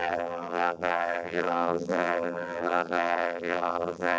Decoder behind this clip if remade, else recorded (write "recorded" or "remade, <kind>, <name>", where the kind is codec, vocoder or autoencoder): remade, vocoder, BigVGAN v2